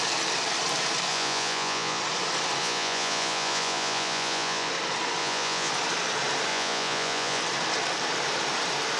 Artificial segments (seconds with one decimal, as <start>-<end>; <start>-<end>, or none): 1.1-2.0; 2.6-4.7; 5.2-5.7; 6.5-7.4